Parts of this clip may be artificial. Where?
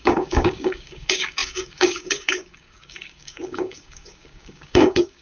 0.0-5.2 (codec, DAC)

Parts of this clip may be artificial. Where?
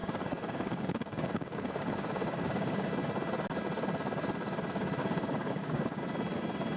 0.0-2.9 (codec, DAC); 5.0-6.0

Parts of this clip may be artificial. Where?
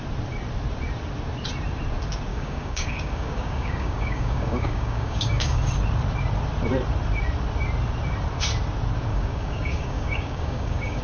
2.3-5.6 (codec, DAC); 9.1-11.0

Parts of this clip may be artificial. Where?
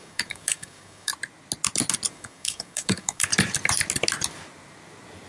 0.0-1.1 (codec, DAC); 2.1-3.3